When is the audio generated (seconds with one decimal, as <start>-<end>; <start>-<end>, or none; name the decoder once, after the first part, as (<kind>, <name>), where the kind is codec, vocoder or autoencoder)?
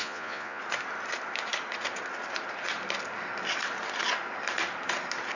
0.0-0.6 (vocoder, Vocos)